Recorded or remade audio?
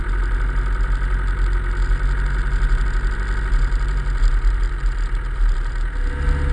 recorded